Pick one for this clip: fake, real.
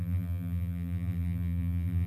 fake